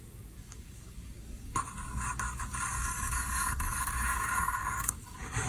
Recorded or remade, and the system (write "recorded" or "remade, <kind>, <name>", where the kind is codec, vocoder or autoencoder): remade, codec, DAC